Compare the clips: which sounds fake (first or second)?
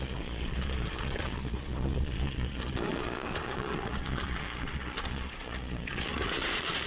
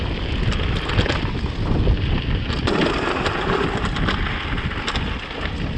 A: first